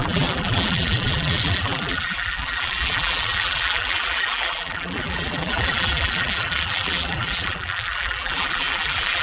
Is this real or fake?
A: fake